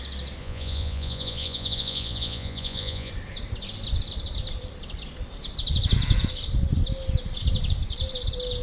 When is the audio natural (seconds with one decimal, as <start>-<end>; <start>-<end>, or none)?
0.0-0.4; 3.1-8.6